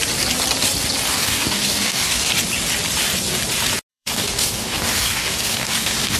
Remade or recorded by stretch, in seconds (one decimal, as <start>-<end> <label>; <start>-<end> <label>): 0.0-1.1 recorded; 1.1-2.3 remade; 2.3-3.9 recorded; 3.9-6.2 remade